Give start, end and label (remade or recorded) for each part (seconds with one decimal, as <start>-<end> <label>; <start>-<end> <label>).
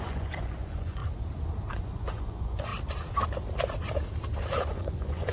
0.0-1.0 remade; 1.0-1.7 recorded; 1.7-2.7 remade; 2.7-4.7 recorded; 4.7-5.3 remade